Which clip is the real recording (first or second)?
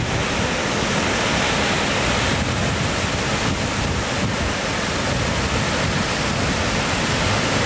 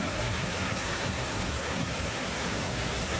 first